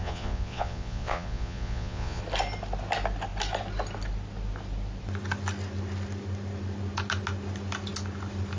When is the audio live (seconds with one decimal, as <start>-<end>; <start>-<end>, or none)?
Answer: 2.2-8.6